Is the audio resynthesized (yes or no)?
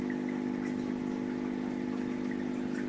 no